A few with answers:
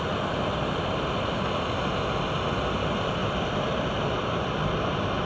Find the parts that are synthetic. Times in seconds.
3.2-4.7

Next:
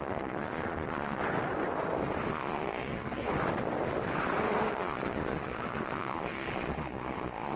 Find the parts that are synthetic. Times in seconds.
0.0-1.2; 2.3-3.2; 4.7-7.6

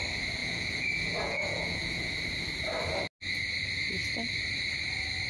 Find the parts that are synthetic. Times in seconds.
0.4-2.1